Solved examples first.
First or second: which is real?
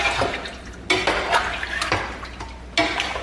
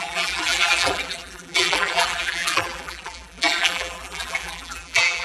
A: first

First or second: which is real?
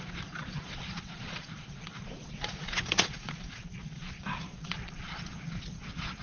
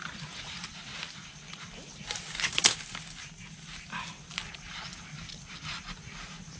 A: second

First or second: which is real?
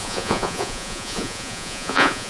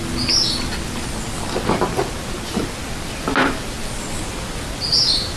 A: second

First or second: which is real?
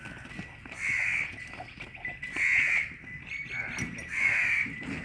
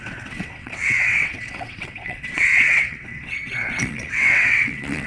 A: first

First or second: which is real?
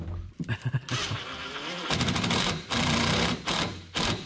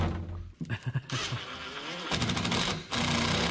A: second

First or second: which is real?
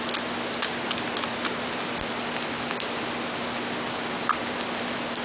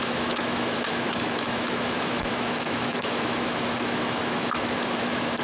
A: first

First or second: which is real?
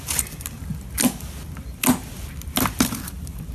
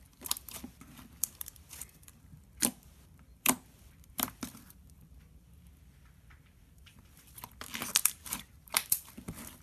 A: first